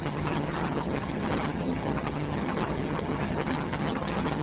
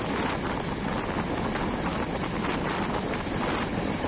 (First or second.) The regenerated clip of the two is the first